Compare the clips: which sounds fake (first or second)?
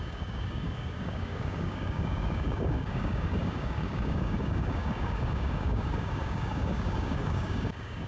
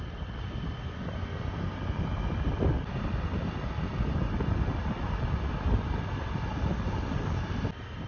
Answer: first